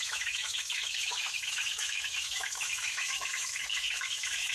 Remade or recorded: remade